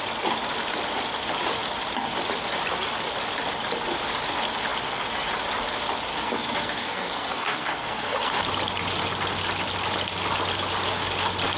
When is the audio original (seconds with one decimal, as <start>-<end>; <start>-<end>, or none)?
0.0-6.1; 8.3-11.6